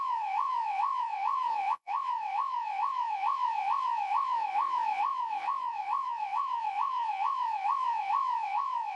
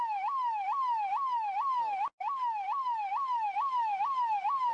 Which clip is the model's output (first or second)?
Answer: first